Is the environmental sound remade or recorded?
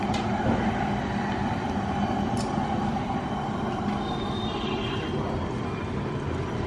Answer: recorded